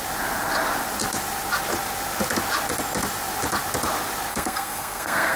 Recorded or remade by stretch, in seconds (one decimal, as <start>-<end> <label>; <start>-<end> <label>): 0.0-4.3 recorded; 4.3-5.4 remade